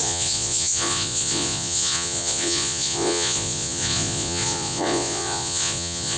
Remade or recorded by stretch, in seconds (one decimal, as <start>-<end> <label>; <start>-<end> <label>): 0.0-6.2 remade